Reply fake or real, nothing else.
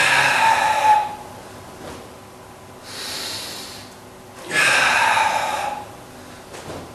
real